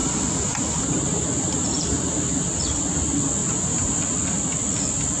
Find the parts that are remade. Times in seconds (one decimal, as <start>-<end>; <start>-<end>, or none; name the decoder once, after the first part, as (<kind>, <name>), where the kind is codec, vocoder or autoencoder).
3.4-4.0 (vocoder, BigVGAN v2)